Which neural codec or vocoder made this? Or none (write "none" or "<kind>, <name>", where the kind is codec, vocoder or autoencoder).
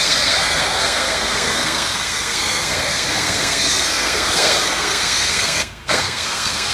codec, SNAC